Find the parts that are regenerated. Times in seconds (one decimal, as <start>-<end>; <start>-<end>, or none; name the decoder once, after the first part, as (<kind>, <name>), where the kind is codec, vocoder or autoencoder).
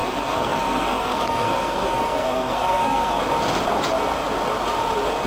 0.0-3.2 (codec, SNAC)